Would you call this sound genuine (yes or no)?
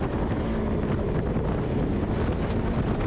yes